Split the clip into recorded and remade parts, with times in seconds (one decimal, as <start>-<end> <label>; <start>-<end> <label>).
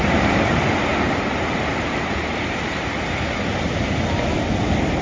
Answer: 0.0-5.0 recorded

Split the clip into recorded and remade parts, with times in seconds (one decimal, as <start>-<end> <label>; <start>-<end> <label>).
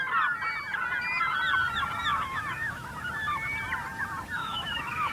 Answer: 0.0-2.1 recorded; 2.1-2.9 remade; 2.9-4.4 recorded; 4.4-5.1 remade